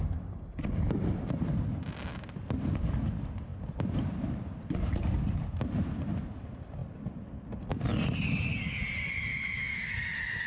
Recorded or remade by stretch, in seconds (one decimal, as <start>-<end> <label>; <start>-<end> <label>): 0.0-9.3 recorded; 9.3-9.9 remade; 9.9-10.5 recorded